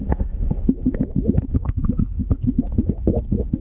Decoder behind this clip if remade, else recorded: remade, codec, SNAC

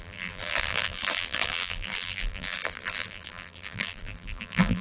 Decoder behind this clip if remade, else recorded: remade, vocoder, BigVGAN v2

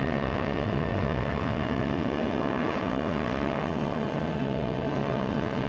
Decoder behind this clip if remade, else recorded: remade, vocoder, WaveNeXt